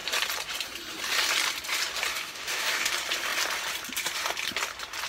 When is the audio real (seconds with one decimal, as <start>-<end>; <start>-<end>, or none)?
0.0-2.1; 2.9-5.1